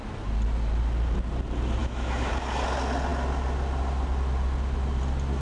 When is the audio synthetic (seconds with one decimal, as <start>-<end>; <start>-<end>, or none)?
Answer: 1.8-2.3